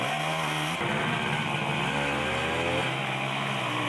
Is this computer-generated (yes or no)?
no